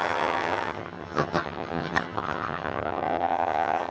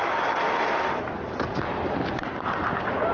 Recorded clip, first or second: second